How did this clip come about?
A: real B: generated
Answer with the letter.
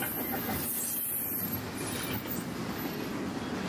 A